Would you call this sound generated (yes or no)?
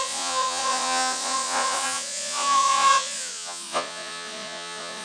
yes